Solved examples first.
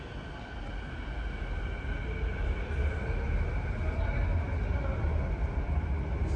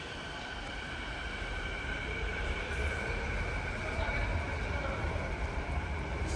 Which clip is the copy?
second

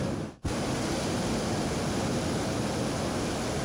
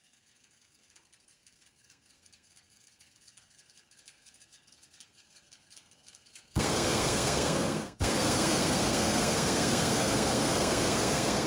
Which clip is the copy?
second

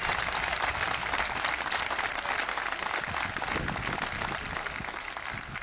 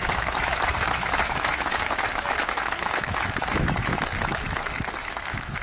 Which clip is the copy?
second